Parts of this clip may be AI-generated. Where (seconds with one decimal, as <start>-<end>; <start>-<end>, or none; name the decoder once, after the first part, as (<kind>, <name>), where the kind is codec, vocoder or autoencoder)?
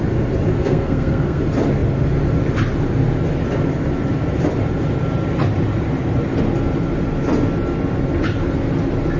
0.5-1.4 (codec, SNAC)